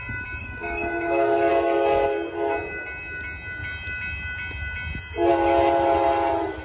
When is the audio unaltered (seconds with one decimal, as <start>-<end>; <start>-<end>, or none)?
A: 0.0-0.4; 1.5-6.6